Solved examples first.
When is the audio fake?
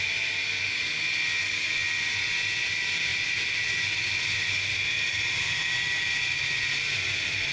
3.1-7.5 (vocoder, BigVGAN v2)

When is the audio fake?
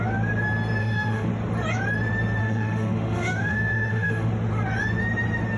0.8-1.3 (autoencoder, DAC-VAE); 2.4-4.3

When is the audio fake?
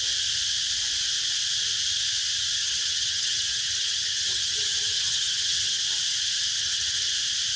2.6-5.8 (vocoder, HiFi-GAN); 6.6-7.1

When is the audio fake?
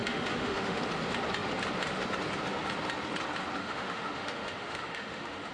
0.0-0.8 (autoencoder, DAC-VAE); 3.6-5.5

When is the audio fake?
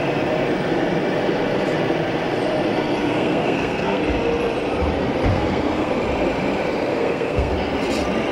3.0-4.0 (codec, SNAC); 5.3-5.9; 6.9-7.5